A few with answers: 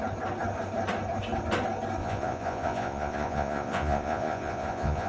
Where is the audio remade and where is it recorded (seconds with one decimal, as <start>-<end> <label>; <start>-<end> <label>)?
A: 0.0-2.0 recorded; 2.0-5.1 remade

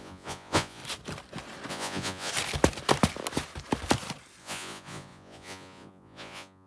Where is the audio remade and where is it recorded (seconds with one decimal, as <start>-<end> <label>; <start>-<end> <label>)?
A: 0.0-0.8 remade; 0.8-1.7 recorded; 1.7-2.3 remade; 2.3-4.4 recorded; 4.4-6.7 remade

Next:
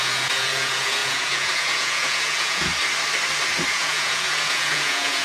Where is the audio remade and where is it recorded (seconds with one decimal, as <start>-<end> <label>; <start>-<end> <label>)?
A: 0.0-2.7 remade; 2.7-3.7 recorded; 3.7-5.2 remade

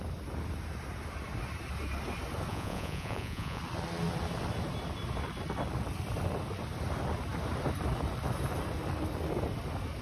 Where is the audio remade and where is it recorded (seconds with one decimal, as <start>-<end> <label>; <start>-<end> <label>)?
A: 0.0-2.5 recorded; 2.5-3.6 remade; 3.6-10.0 recorded

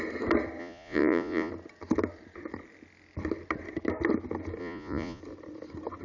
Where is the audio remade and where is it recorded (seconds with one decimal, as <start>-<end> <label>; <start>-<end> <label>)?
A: 0.0-0.6 recorded; 0.6-1.5 remade; 1.5-4.6 recorded; 4.6-5.2 remade; 5.2-6.0 recorded

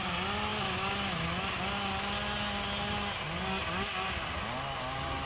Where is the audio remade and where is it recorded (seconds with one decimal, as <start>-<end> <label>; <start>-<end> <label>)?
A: 0.0-5.3 recorded

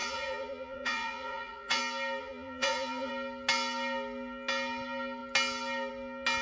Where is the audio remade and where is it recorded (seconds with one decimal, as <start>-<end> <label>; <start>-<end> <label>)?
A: 0.0-1.8 remade; 1.8-2.2 recorded; 2.2-3.1 remade; 3.1-6.4 recorded

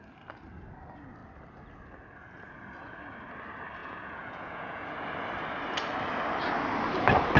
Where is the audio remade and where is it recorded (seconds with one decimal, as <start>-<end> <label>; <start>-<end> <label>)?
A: 0.0-3.8 recorded; 3.8-4.9 remade; 4.9-7.4 recorded